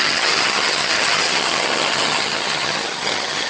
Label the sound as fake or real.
fake